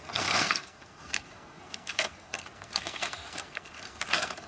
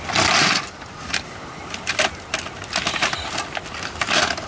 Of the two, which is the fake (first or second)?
first